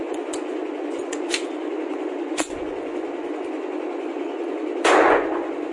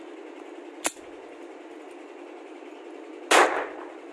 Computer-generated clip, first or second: first